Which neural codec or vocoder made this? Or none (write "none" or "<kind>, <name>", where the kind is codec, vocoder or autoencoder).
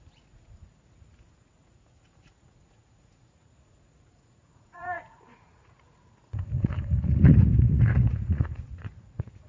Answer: vocoder, Vocos